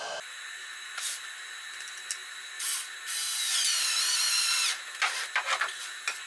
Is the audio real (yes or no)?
yes